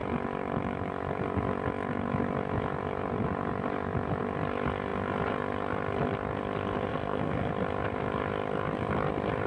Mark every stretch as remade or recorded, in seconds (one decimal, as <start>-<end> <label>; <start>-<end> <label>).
0.0-6.9 recorded; 6.9-7.5 remade; 7.5-9.5 recorded